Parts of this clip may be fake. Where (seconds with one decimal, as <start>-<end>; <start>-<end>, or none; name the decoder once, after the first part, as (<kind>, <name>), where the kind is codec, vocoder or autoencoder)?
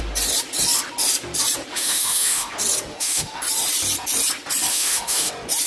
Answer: 1.7-2.5 (autoencoder, DAC-VAE); 2.9-3.4; 4.7-5.3